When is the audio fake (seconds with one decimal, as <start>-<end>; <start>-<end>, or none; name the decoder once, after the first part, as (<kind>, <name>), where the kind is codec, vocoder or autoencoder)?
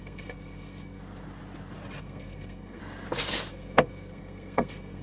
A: 0.0-1.0 (codec, SNAC); 2.0-2.8; 3.5-5.0